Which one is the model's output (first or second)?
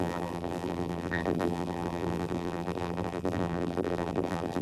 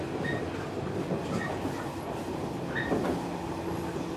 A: first